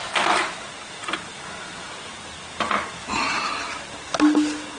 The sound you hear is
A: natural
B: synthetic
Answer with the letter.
A